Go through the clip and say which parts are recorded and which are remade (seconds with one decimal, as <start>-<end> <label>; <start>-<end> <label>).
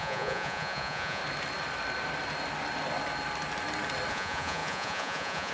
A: 0.0-1.2 remade; 1.2-4.1 recorded; 4.1-5.5 remade